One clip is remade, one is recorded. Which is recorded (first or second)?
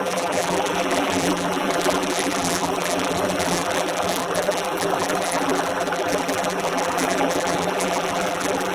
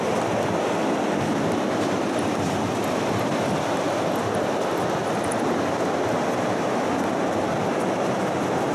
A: second